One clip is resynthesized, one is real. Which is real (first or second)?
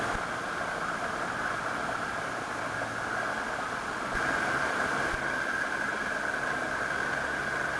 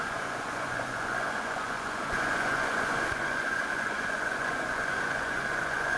first